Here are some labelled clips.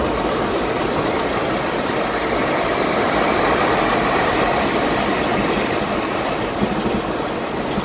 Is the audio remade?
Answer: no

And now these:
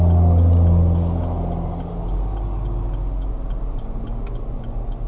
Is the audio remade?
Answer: no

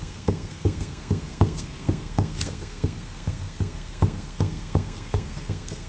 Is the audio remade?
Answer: yes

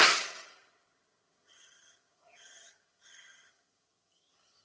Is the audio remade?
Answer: yes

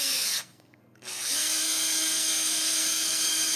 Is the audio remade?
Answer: yes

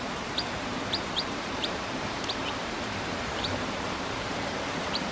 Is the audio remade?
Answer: yes